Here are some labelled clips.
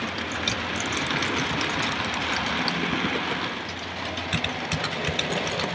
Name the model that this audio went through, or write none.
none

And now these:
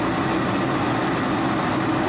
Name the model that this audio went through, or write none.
none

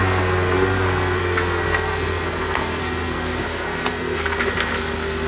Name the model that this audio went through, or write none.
codec, SNAC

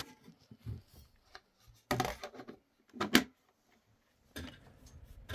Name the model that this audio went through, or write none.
none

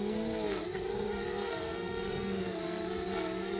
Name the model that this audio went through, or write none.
codec, SNAC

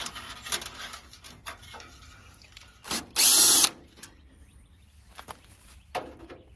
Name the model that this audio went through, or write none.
none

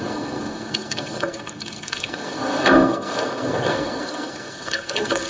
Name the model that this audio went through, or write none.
codec, SNAC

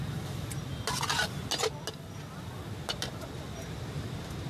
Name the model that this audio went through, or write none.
none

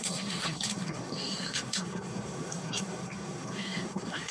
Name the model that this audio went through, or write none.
codec, SNAC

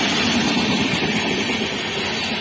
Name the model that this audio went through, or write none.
none